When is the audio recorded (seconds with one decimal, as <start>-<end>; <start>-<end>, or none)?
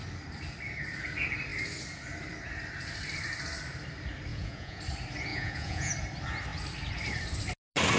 0.0-4.3; 4.8-5.3; 5.9-8.0